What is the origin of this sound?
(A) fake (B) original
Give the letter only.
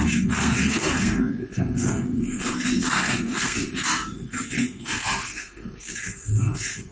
A